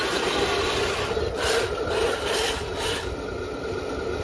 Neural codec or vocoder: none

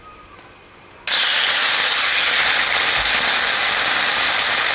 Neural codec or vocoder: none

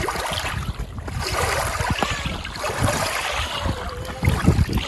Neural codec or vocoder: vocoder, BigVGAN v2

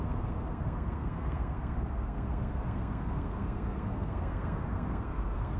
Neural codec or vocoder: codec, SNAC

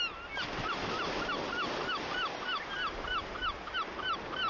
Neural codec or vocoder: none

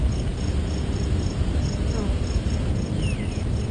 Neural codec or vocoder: none